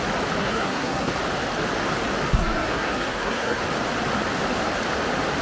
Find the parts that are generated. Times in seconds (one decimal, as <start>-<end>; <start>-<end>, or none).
0.4-1.1; 2.3-3.6